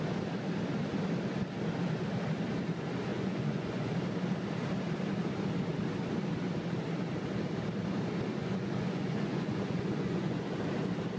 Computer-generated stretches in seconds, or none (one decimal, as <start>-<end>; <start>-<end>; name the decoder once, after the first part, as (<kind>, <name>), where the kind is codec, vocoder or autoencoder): 3.1-3.9 (vocoder, Vocos); 8.4-10.5